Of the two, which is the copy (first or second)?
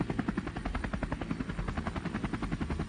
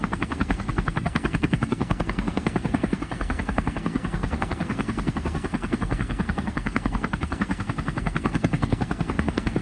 second